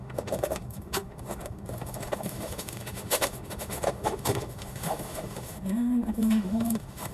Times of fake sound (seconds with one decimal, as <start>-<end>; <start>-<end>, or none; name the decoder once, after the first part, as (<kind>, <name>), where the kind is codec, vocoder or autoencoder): 0.0-7.1 (autoencoder, DAC-VAE)